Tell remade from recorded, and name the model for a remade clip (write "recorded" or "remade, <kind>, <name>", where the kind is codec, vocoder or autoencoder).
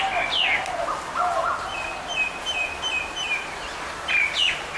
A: recorded